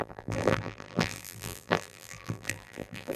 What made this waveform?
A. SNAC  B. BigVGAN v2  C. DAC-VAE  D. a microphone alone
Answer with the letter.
B